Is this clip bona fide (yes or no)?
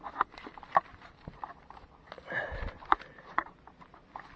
yes